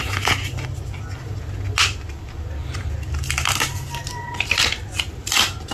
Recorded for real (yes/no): yes